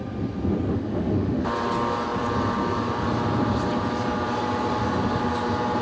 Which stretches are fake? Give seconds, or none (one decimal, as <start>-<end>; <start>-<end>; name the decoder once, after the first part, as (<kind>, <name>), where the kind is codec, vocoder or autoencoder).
0.7-1.5 (autoencoder, DAC-VAE)